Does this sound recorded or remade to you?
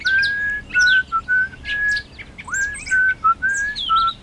recorded